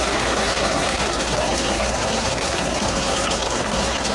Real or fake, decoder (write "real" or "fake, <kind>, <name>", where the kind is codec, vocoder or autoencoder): fake, codec, SNAC